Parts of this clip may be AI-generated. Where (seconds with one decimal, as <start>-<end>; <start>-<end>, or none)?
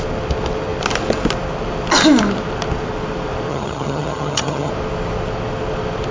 3.5-4.7